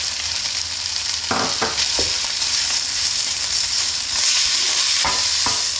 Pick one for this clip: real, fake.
real